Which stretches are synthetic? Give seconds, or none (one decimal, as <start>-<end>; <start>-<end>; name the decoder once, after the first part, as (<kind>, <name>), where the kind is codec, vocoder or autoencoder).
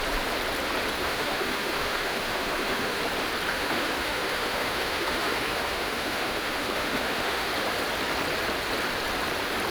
1.0-3.0 (autoencoder, DAC-VAE); 3.5-7.5